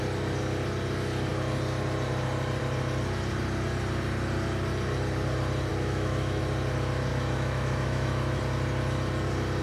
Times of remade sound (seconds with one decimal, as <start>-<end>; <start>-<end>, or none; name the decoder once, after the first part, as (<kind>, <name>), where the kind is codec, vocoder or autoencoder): 5.7-6.4 (autoencoder, DAC-VAE); 7.1-8.4